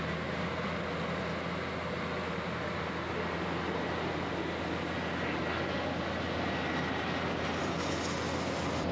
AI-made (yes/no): no